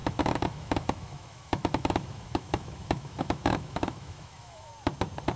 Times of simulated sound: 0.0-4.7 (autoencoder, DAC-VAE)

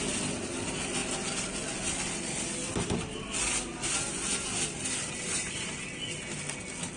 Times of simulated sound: none

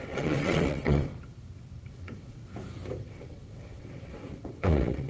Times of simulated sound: 0.0-1.1 (vocoder, WaveNeXt); 1.9-2.4; 3.0-5.1